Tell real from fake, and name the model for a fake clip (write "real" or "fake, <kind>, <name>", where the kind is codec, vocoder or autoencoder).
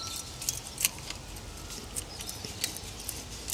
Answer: real